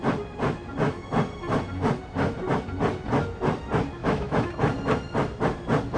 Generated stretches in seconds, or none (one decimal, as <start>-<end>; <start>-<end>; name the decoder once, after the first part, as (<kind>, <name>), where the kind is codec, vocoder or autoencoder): 4.0-4.5 (autoencoder, DAC-VAE)